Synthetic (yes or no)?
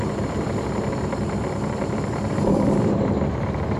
yes